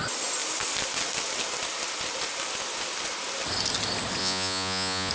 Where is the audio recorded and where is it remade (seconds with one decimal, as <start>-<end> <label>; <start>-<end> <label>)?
0.0-4.2 recorded; 4.2-5.1 remade